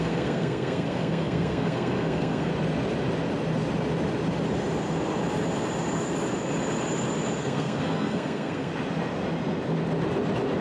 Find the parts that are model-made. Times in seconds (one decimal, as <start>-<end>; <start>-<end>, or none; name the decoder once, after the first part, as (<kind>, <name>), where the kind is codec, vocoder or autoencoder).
0.0-2.5 (codec, SNAC); 7.4-8.7